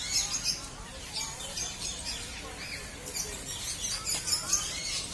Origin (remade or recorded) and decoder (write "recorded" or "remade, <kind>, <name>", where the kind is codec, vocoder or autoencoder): recorded